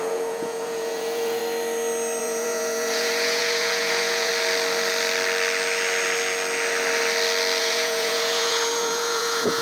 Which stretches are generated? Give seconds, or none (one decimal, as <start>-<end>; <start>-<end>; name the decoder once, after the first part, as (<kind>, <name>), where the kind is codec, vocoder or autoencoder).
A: 0.0-1.4 (vocoder, Vocos); 2.2-4.3; 7.6-9.6